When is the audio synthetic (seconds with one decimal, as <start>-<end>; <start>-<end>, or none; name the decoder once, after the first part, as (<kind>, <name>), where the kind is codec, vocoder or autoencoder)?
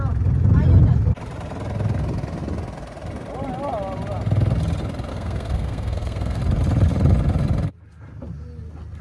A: 5.1-6.4 (codec, SNAC)